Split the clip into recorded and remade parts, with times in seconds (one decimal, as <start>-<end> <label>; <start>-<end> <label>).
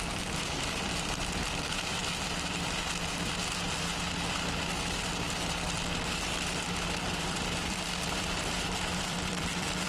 0.0-2.0 remade; 2.0-7.1 recorded; 7.1-9.9 remade